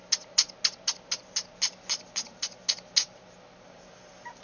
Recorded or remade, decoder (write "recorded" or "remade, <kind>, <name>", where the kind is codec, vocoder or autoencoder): recorded